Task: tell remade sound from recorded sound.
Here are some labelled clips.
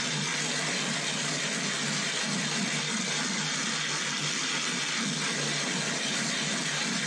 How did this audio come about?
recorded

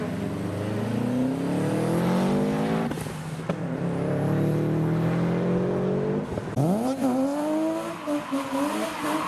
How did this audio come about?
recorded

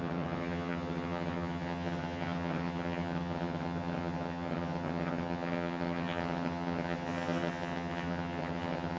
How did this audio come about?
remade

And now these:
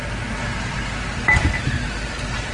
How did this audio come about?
recorded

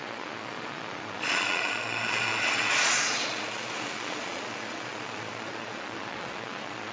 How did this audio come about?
remade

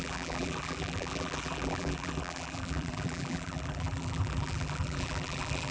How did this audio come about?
remade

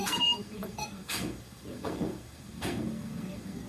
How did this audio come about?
remade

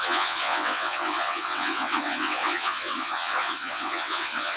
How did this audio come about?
remade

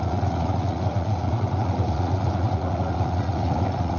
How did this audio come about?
remade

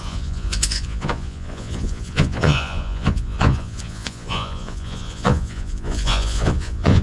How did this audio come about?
remade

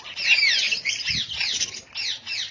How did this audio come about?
recorded